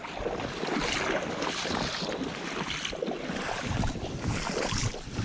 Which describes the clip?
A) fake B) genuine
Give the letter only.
B